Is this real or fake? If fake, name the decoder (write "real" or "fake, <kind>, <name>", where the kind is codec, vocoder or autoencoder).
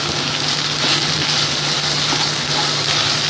real